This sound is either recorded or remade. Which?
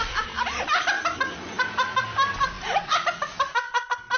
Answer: recorded